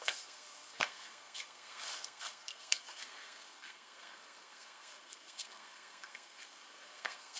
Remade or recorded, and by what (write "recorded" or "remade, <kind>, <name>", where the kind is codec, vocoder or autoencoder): remade, codec, SNAC